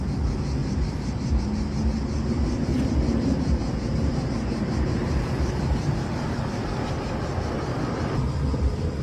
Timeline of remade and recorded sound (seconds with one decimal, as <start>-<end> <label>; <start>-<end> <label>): 0.0-0.6 recorded; 0.6-1.4 remade; 1.4-2.7 recorded; 2.7-6.4 remade; 6.4-7.7 recorded; 7.7-8.3 remade; 8.3-9.0 recorded